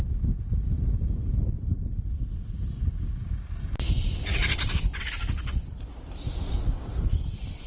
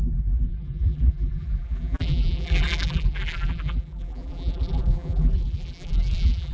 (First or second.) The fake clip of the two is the second